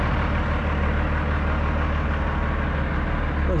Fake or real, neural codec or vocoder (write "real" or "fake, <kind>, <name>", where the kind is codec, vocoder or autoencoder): real